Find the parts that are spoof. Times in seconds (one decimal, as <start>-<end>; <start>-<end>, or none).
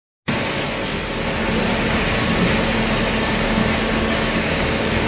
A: 3.1-3.6; 4.1-5.1